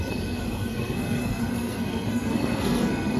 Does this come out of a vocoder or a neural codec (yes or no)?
yes